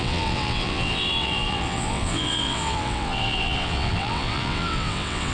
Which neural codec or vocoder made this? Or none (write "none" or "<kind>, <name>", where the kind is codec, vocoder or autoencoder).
vocoder, WaveNeXt